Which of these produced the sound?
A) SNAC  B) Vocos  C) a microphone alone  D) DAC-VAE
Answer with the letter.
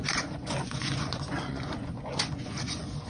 B